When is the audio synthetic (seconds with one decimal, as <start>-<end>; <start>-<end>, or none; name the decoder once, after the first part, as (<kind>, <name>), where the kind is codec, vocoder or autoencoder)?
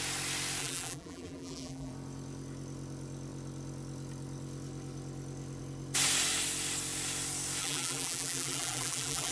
0.6-1.9 (vocoder, BigVGAN v2); 7.6-9.3